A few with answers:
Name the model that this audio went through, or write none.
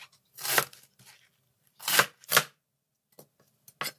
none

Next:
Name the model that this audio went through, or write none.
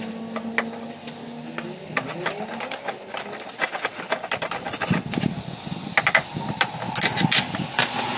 none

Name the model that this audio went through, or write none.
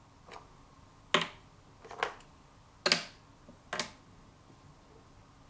none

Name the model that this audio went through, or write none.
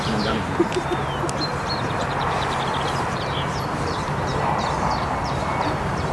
vocoder, BigVGAN v2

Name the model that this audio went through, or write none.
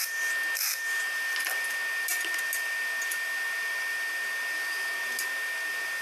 none